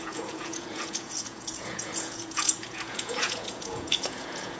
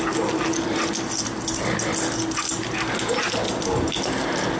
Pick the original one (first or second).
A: second